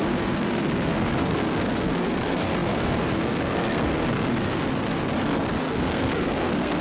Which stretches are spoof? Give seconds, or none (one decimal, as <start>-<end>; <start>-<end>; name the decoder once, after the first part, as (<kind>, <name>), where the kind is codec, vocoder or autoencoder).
0.0-6.8 (codec, SNAC)